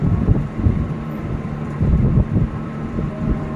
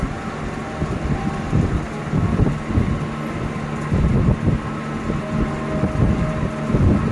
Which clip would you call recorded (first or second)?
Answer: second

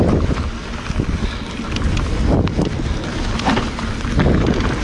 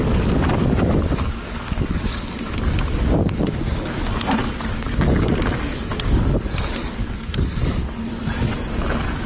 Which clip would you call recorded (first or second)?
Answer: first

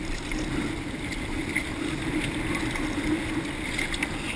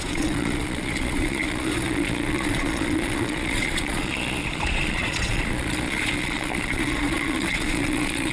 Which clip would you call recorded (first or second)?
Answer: first